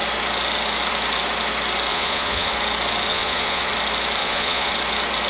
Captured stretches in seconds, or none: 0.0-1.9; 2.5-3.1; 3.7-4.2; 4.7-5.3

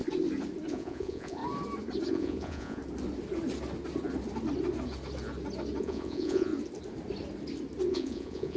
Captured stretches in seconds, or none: 0.0-0.7; 1.4-2.1; 2.8-5.8; 6.5-7.9

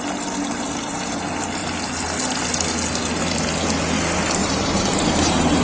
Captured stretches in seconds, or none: 0.0-4.4